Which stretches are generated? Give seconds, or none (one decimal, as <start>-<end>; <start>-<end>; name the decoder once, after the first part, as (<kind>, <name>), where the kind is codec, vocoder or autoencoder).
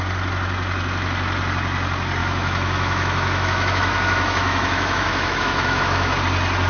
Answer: 2.2-6.2 (autoencoder, DAC-VAE)